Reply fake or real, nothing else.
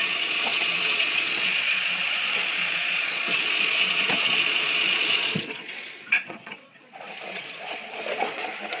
fake